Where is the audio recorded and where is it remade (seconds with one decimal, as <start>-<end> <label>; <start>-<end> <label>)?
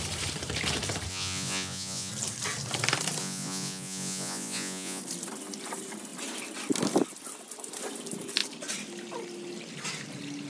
0.0-1.1 recorded; 1.1-2.1 remade; 2.1-3.2 recorded; 3.2-5.0 remade; 5.0-10.5 recorded